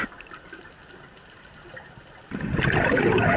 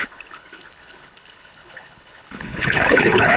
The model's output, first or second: second